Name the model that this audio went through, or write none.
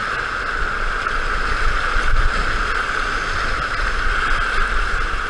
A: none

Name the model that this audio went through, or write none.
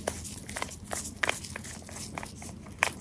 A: none